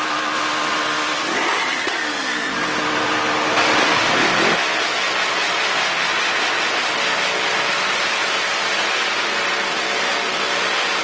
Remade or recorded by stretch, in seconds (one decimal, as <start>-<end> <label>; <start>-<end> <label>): 0.0-11.0 recorded